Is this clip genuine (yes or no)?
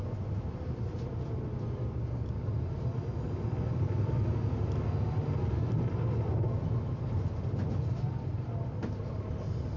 yes